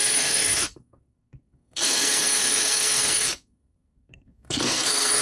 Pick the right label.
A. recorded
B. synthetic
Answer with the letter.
B